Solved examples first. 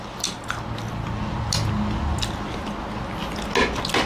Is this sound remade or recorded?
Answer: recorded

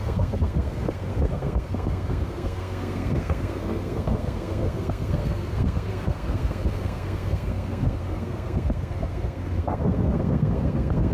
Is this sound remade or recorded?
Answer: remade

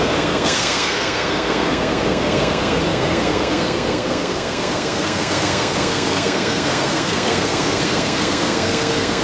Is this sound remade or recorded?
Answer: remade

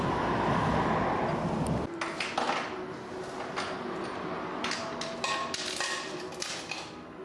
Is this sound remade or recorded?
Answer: recorded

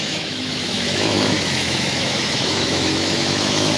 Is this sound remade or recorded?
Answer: remade